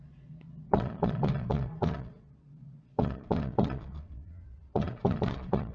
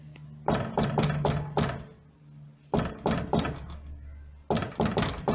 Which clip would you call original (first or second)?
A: second